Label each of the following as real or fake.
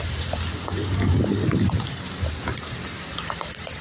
fake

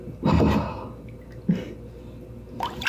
real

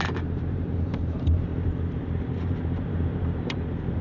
fake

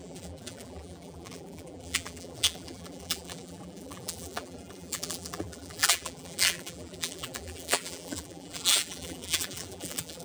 fake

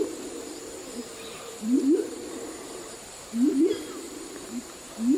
fake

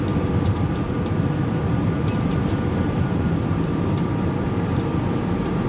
fake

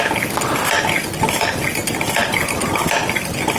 real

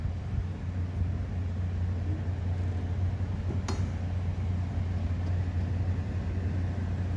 real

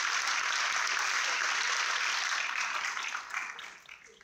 real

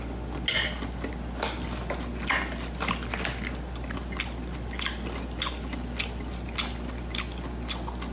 real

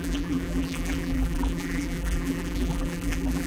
fake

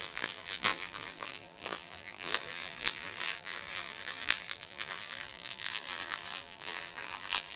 fake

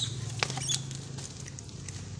real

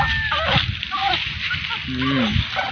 real